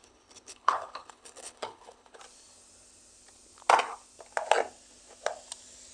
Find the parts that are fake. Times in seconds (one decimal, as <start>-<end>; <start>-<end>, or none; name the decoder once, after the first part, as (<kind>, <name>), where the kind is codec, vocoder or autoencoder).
0.0-2.2 (codec, HILCodec)